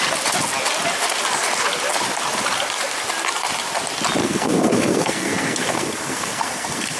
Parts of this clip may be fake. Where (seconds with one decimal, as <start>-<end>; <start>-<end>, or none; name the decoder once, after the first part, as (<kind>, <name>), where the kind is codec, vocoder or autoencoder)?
4.2-7.0 (codec, SNAC)